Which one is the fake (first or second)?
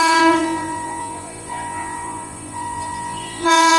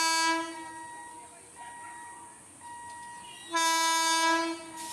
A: first